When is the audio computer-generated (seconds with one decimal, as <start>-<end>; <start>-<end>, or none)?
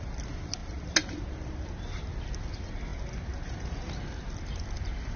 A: none